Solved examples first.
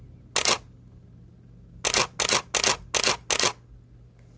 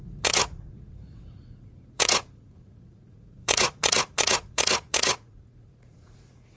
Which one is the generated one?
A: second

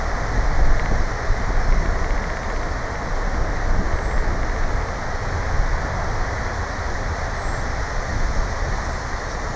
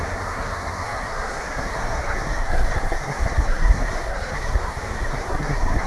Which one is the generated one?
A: second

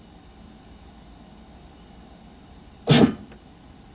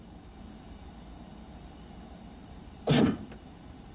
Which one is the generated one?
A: second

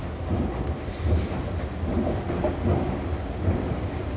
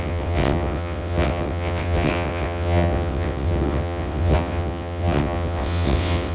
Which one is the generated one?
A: second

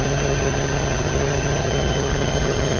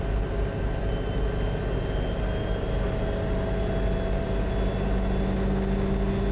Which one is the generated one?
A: first